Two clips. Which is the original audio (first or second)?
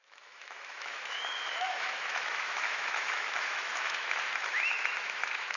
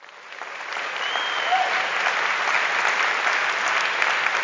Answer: second